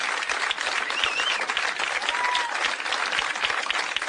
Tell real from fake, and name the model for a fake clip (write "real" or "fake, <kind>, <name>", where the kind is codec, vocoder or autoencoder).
real